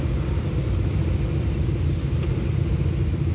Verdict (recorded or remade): recorded